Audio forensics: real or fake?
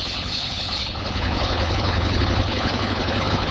fake